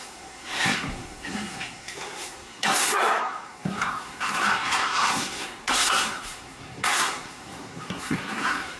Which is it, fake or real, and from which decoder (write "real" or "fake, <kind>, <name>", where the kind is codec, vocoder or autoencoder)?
fake, codec, SNAC